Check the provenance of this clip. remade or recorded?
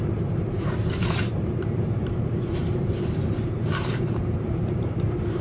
remade